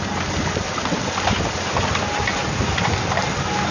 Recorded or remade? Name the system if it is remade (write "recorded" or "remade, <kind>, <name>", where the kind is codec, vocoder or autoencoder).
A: recorded